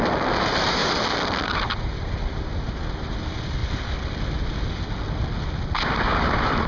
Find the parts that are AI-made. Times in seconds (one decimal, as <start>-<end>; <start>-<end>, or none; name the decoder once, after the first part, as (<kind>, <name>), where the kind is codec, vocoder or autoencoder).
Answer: none